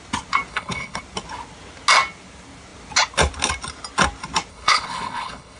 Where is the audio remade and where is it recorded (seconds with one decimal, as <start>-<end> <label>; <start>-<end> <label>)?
0.0-0.5 recorded; 0.5-1.0 remade; 1.0-4.5 recorded; 4.5-5.6 remade